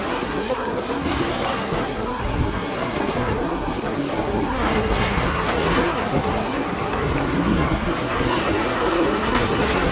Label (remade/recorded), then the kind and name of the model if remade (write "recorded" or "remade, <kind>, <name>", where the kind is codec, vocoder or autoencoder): remade, codec, SNAC